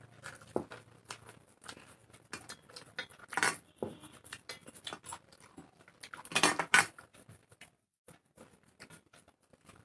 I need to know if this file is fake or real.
real